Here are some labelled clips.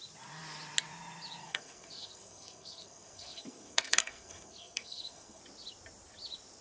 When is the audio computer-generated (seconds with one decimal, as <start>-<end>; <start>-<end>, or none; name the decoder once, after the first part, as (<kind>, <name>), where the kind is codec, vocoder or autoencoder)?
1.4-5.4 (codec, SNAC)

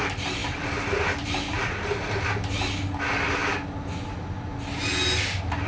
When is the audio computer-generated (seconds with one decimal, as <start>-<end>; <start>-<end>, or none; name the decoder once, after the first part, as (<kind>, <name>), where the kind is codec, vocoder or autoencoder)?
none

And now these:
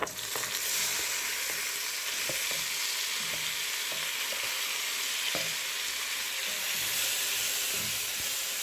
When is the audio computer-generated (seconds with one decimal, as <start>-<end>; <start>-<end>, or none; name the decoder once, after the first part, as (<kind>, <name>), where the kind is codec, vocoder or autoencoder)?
none

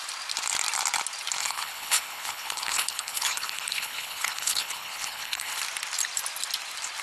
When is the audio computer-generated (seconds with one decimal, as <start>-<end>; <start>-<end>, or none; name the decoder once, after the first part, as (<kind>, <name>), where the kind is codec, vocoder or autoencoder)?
1.4-5.6 (codec, HILCodec)